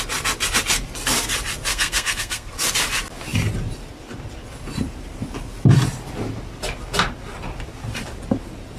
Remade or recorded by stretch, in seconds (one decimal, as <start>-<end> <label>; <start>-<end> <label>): 0.0-1.7 recorded; 1.7-2.5 remade; 2.5-8.8 recorded